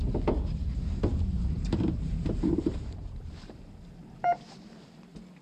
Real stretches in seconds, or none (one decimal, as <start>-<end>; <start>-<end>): 0.0-1.1; 4.3-5.4